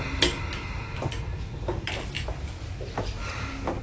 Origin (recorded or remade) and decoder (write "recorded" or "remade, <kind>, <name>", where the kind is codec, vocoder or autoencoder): recorded